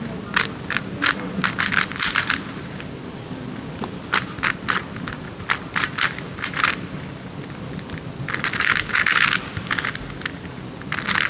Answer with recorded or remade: recorded